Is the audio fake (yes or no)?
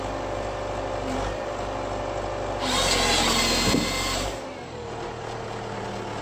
no